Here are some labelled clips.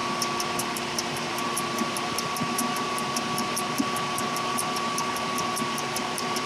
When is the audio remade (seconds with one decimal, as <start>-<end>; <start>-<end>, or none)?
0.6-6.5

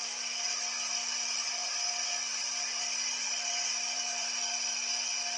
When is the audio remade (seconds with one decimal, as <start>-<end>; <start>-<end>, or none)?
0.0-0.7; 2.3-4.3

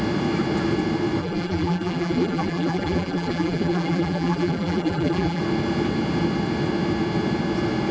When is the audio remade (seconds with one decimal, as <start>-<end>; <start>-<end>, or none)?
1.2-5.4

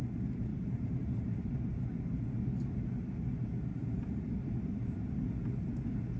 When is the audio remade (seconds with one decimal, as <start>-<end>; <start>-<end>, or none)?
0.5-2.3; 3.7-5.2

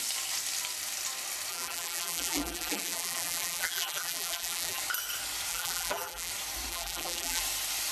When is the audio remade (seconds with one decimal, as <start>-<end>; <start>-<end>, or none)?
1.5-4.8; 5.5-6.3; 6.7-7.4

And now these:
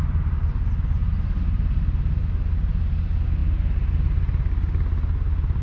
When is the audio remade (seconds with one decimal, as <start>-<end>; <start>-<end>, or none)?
none

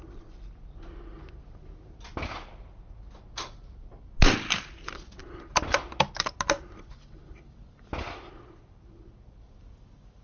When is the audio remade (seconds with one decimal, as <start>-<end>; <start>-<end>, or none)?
none